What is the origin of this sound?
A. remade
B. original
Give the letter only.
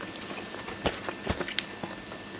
B